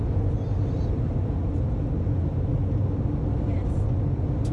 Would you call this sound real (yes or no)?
yes